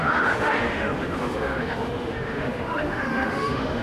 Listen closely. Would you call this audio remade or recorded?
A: remade